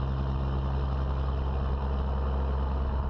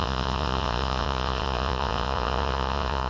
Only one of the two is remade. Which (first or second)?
second